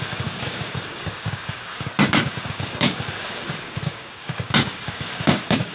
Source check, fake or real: fake